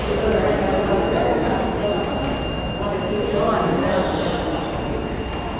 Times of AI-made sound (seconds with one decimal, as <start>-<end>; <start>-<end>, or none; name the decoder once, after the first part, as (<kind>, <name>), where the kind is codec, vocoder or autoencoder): none